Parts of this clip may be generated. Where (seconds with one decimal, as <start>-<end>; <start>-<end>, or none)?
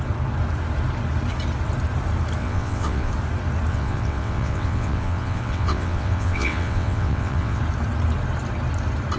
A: 2.4-3.1; 3.7-7.6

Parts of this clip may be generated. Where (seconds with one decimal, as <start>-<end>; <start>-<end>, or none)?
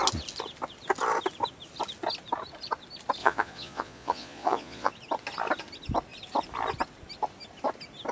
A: 3.2-4.9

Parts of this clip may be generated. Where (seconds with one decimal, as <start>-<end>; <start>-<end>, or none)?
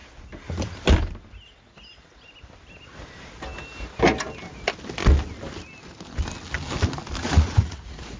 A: 7.2-8.2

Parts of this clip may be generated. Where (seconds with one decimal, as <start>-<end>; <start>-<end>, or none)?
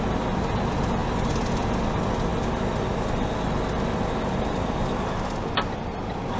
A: none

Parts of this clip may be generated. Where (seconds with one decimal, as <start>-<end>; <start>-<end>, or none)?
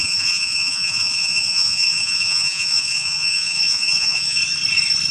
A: 0.0-4.4